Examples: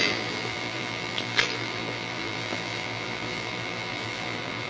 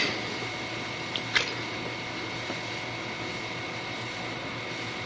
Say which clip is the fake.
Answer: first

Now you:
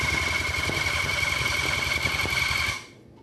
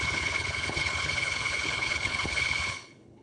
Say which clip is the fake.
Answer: second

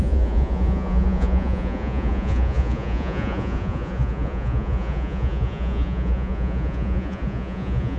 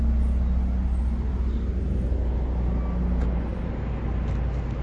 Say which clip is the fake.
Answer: first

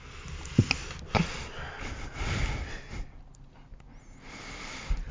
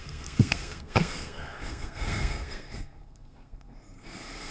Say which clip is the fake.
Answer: second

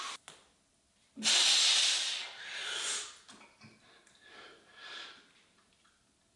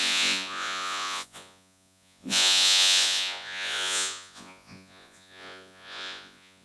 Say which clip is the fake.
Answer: second